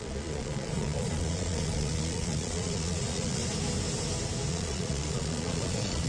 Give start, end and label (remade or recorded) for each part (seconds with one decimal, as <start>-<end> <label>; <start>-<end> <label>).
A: 0.0-3.4 remade; 3.4-4.5 recorded; 4.5-6.1 remade

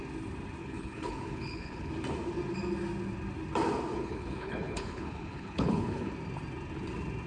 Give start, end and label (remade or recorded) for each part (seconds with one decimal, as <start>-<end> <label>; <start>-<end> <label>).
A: 0.0-0.6 recorded; 0.6-1.9 remade; 1.9-3.9 recorded; 3.9-6.1 remade; 6.1-7.3 recorded

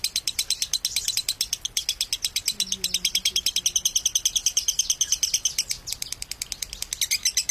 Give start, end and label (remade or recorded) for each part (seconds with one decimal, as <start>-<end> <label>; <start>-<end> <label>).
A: 0.0-7.5 recorded

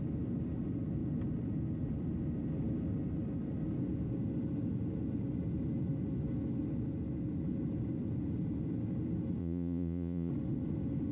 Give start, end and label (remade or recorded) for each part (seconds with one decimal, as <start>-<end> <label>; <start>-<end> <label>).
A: 0.0-9.4 recorded; 9.4-10.3 remade; 10.3-11.1 recorded

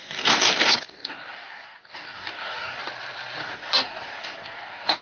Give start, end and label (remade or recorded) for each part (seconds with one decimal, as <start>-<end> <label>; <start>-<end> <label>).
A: 0.0-2.8 remade; 2.8-3.4 recorded; 3.4-5.0 remade

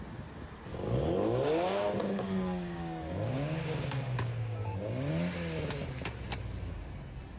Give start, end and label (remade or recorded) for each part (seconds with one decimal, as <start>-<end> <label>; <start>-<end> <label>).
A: 0.0-0.7 recorded; 0.7-5.1 remade; 5.1-7.4 recorded